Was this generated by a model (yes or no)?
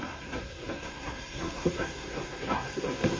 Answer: yes